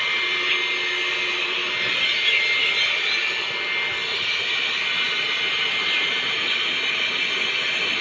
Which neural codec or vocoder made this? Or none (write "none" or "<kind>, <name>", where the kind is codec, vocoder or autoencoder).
none